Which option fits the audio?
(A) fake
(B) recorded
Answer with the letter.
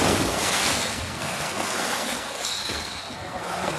A